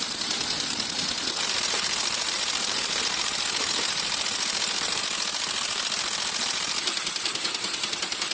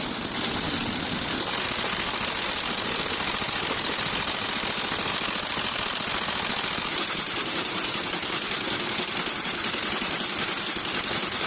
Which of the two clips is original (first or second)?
second